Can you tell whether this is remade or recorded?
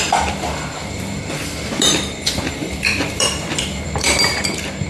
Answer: remade